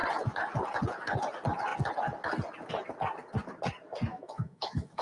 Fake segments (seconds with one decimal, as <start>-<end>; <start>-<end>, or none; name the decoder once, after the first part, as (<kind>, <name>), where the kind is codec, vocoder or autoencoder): 4.1-5.0 (autoencoder, DAC-VAE)